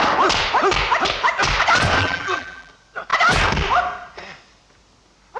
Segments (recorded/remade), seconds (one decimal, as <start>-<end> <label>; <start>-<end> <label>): 0.0-2.0 recorded; 2.0-2.7 remade; 2.7-5.4 recorded